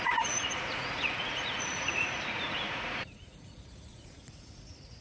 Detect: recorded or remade remade